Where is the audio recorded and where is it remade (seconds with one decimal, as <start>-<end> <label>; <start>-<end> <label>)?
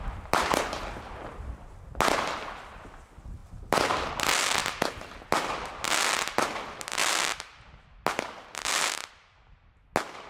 0.0-10.3 recorded